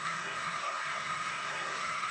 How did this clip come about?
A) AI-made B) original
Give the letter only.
A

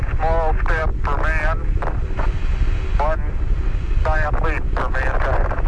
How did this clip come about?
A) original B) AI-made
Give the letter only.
A